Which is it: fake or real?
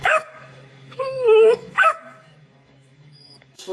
fake